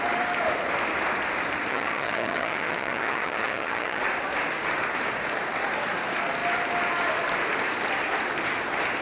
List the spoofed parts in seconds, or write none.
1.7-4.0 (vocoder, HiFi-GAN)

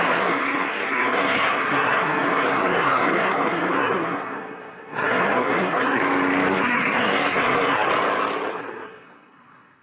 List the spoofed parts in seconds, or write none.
0.0-6.0 (codec, SNAC); 6.5-7.9; 8.5-9.8

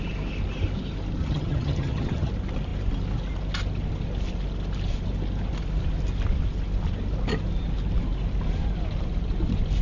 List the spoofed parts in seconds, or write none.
1.2-2.3 (vocoder, HiFi-GAN)

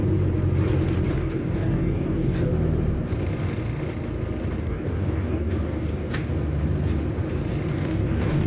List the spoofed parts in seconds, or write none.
1.1-2.5 (codec, DAC); 4.6-6.3; 7.7-8.5

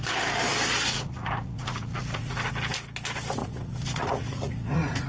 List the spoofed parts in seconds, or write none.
0.9-2.5 (vocoder, Vocos); 3.4-5.1

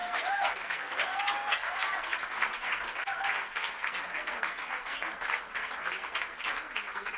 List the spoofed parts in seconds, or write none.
0.0-7.2 (codec, SNAC)